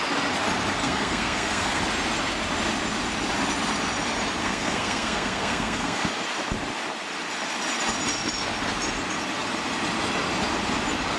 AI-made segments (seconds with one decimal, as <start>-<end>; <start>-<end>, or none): 0.8-1.8; 4.4-6.2